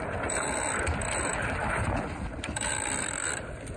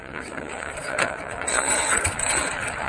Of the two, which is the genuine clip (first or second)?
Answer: first